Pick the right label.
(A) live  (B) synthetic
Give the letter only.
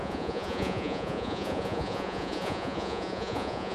B